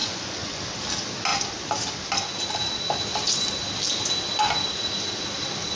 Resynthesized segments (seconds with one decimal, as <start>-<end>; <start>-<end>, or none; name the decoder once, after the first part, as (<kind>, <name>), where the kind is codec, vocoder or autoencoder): 0.0-0.6 (vocoder, Vocos)